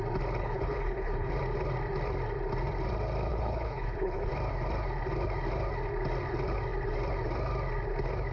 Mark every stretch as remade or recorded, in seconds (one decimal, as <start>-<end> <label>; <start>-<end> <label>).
0.0-0.4 recorded; 0.4-1.3 remade; 1.3-3.3 recorded; 3.3-4.3 remade; 4.3-8.3 recorded